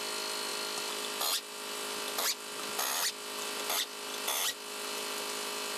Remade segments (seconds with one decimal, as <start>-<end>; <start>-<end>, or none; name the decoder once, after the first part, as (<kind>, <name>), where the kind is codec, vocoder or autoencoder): none